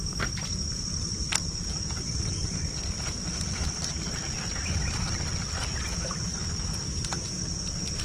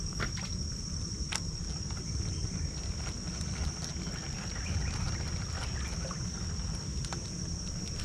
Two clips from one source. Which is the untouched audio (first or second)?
second